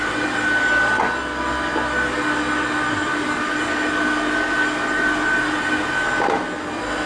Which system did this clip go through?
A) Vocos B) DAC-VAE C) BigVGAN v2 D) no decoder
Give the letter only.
D